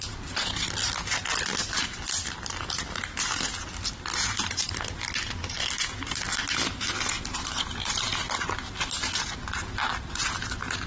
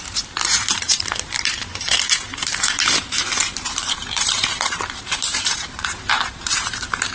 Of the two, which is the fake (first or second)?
second